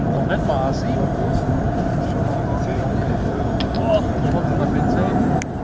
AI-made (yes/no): no